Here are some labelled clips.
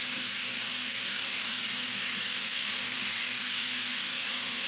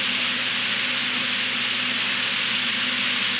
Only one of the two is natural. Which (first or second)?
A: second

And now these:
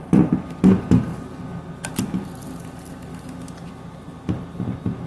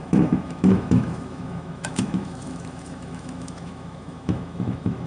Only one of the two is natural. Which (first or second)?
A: first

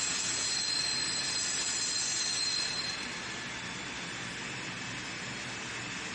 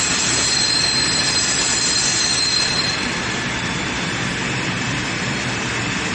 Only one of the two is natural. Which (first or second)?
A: first